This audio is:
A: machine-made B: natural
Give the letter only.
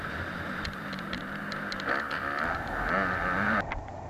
B